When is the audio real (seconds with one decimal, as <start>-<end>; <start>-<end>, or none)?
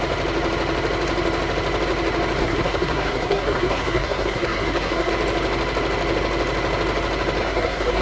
0.0-2.4; 5.1-7.4